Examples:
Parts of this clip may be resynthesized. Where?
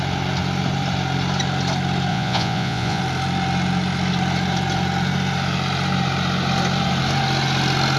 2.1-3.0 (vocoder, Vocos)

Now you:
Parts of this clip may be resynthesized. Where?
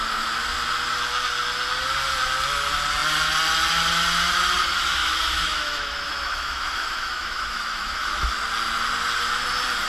5.0-8.3 (autoencoder, DAC-VAE)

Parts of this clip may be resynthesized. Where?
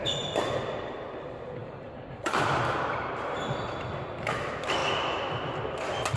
0.0-0.5 (vocoder, BigVGAN v2); 1.6-3.5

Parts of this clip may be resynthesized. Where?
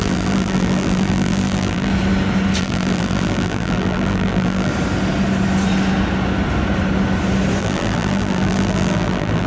0.0-1.9 (vocoder, BigVGAN v2); 2.6-4.7; 7.6-9.5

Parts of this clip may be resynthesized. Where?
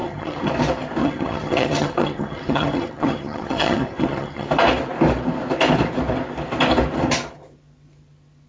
0.0-0.5 (vocoder, HiFi-GAN); 1.0-4.5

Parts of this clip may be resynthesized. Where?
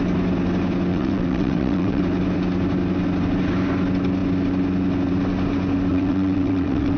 0.9-2.0 (vocoder, WaveNeXt); 5.9-7.0